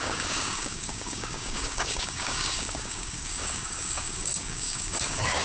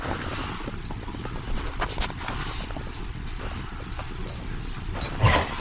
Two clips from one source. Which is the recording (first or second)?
second